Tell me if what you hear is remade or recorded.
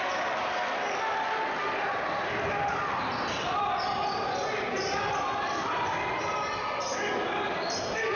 recorded